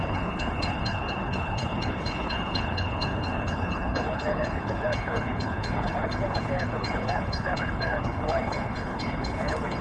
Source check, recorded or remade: remade